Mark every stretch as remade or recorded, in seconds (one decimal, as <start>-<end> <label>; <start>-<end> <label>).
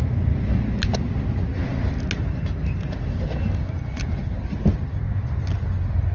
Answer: 0.0-6.1 recorded